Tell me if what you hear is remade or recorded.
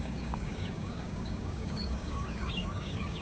remade